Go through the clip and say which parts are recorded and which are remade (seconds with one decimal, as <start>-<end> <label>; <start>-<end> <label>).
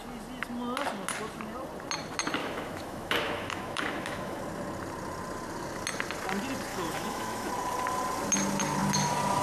0.0-2.4 recorded; 2.4-4.4 remade; 4.4-6.7 recorded; 6.7-7.5 remade; 7.5-9.4 recorded